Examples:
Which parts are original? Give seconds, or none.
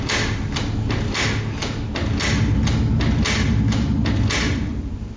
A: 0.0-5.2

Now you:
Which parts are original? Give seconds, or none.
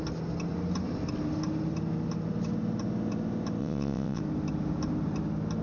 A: 0.0-3.6; 4.2-5.6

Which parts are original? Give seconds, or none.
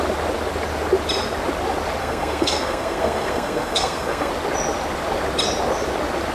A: 0.0-2.0; 4.3-6.3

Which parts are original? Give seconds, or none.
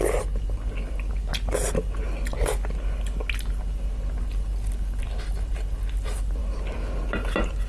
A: 0.0-7.7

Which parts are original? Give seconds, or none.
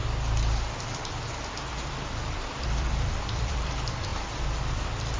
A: 4.1-4.8